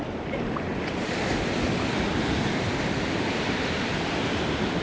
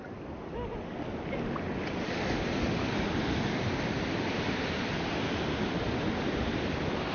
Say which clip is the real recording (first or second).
second